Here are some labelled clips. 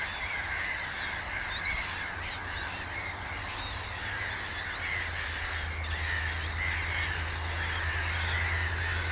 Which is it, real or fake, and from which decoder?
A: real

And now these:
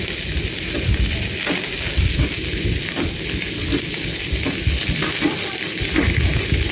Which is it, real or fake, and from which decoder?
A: real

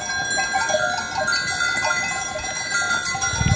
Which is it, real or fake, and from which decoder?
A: real